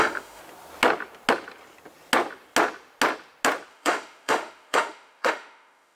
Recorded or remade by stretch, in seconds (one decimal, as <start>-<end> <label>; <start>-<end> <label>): 0.0-0.4 remade; 0.4-3.7 recorded; 3.7-6.0 remade